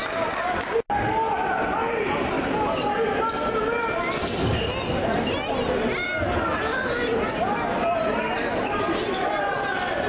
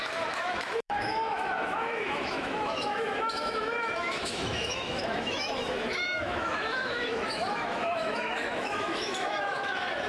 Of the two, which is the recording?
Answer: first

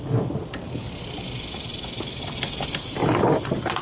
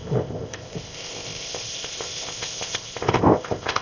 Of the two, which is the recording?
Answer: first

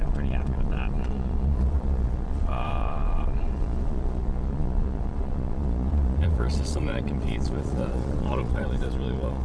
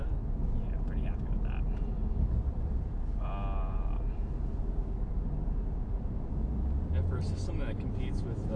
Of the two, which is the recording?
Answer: second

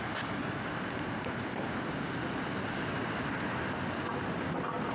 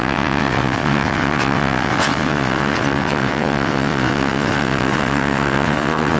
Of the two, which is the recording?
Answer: first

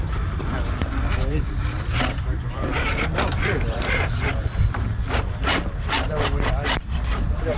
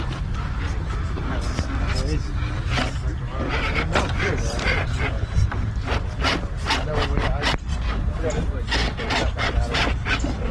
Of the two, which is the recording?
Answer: second